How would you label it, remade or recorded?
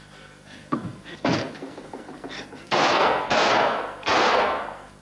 remade